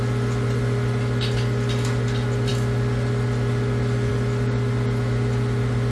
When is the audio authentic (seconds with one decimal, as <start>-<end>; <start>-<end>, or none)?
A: 0.0-5.9